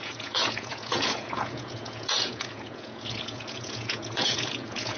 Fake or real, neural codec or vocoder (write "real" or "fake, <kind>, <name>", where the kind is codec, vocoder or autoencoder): fake, vocoder, Vocos